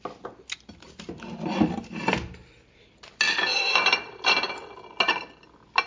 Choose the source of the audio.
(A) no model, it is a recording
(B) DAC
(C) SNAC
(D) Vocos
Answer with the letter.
A